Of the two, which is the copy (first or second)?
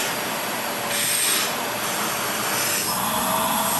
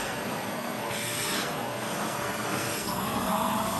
second